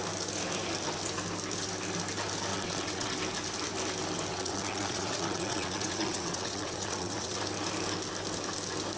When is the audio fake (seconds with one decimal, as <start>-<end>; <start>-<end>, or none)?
2.5-3.1; 4.3-7.4